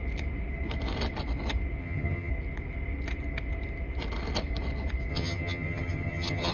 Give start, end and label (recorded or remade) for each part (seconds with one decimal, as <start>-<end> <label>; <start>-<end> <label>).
0.0-1.8 recorded; 1.8-2.3 remade; 2.3-5.1 recorded; 5.1-6.5 remade